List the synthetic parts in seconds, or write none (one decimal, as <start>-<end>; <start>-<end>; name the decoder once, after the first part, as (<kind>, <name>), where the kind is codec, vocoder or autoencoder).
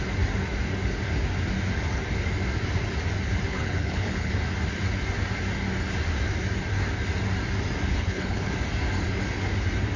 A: 3.5-4.3 (codec, HILCodec); 7.9-8.5